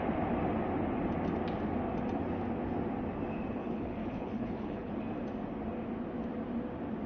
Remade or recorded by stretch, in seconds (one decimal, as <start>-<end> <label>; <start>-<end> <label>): 0.0-3.6 recorded; 3.6-4.9 remade; 4.9-7.1 recorded